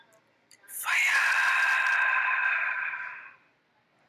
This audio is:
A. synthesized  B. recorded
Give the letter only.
A